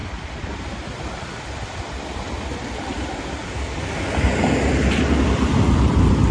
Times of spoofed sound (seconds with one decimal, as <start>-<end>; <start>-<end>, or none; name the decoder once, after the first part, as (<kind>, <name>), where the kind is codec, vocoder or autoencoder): none